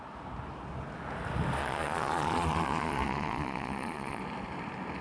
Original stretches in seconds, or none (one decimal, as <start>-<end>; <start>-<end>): 0.0-1.6; 4.2-5.0